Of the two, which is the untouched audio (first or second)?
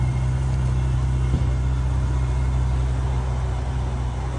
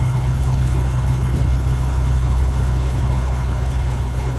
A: first